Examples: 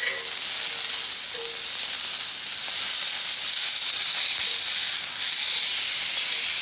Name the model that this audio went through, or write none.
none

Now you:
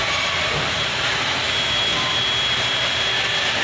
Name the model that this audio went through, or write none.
none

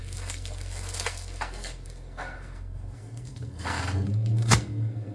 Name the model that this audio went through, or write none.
codec, SNAC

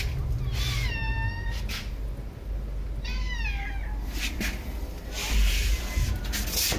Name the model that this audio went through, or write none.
none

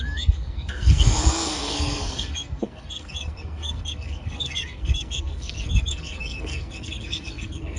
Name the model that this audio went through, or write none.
codec, SNAC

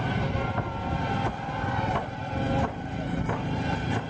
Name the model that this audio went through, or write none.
none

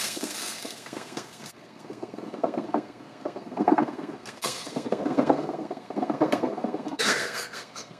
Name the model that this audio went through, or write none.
codec, SNAC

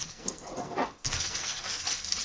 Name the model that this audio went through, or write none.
codec, SNAC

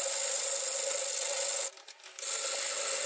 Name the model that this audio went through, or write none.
none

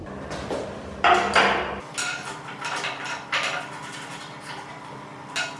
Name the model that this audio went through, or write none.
none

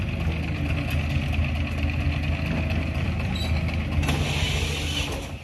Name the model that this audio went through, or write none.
none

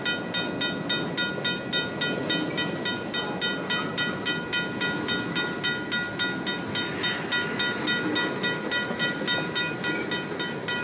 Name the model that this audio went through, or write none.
none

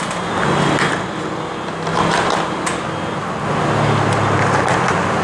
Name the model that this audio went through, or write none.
none